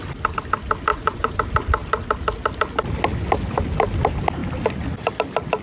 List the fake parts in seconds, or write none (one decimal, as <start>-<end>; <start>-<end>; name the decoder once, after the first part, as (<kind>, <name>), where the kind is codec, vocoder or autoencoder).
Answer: 0.9-1.4 (vocoder, Vocos)